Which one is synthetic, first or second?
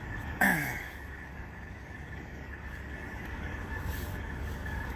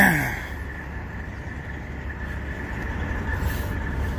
first